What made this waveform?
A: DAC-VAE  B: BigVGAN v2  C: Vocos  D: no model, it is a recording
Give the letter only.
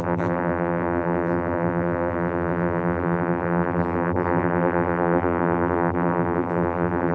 B